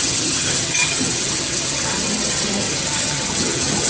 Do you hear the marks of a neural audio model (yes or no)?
yes